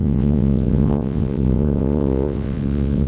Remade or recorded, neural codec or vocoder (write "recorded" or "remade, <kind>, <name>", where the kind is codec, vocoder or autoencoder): remade, vocoder, WaveNeXt